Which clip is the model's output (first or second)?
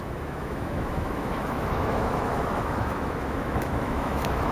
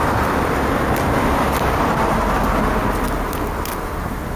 first